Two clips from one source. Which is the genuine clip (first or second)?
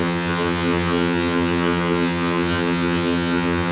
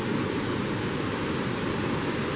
second